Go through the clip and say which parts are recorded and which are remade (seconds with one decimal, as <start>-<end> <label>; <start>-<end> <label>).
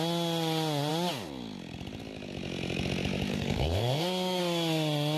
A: 0.0-3.3 recorded; 3.3-4.4 remade; 4.4-5.2 recorded